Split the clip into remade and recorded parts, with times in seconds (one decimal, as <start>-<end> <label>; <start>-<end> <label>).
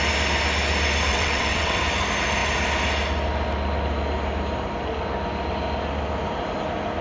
0.0-1.1 recorded; 1.1-1.8 remade; 1.8-7.0 recorded